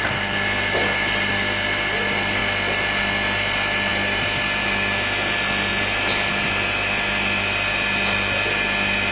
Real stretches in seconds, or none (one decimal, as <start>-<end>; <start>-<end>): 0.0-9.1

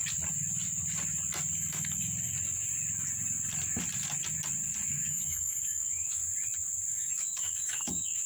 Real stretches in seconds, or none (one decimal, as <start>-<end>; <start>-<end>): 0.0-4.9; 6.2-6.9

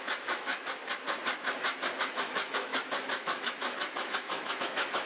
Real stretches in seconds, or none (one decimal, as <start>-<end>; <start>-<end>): 0.8-2.0

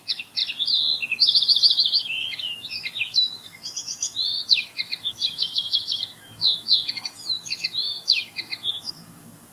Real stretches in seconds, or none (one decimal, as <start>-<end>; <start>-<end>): 0.4-2.0

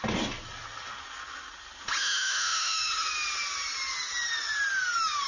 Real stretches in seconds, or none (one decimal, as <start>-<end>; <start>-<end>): 0.0-2.0; 2.9-5.3

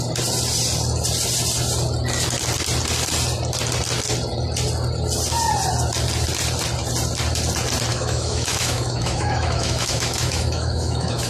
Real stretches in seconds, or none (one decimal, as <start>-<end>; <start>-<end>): 0.0-7.9